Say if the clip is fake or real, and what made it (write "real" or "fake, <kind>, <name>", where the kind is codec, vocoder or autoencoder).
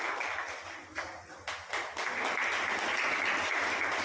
real